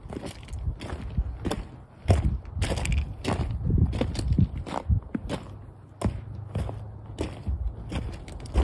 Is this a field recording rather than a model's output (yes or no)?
yes